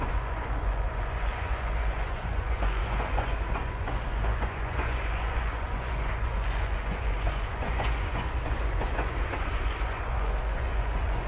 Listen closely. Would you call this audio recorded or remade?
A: remade